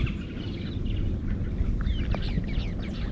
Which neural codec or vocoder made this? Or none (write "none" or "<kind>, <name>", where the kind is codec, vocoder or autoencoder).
none